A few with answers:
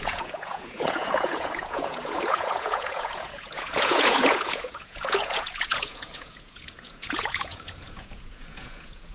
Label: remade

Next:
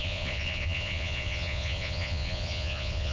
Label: remade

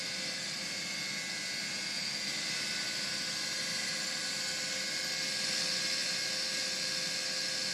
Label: recorded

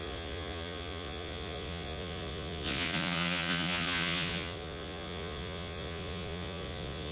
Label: remade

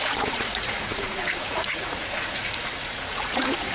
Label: remade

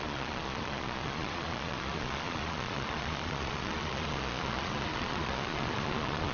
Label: remade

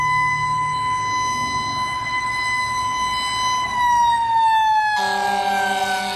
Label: recorded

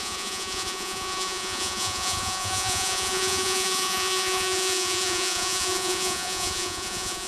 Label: remade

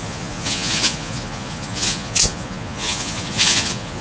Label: remade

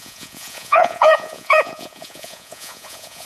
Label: remade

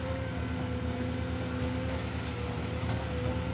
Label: recorded